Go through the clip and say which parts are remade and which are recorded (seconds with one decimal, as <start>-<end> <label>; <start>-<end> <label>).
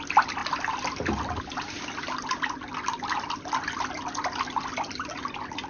0.0-5.7 recorded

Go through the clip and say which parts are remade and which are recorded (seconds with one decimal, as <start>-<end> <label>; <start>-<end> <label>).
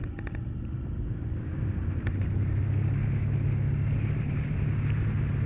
0.0-5.5 recorded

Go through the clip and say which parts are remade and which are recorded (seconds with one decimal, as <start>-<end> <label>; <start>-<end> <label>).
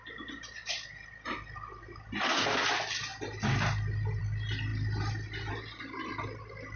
0.0-6.8 recorded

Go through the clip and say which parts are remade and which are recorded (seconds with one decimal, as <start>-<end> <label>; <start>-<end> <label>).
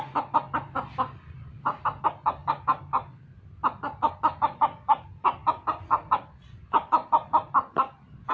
0.0-8.3 recorded